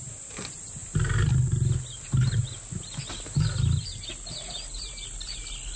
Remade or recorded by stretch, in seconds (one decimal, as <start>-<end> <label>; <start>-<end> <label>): 0.0-5.8 recorded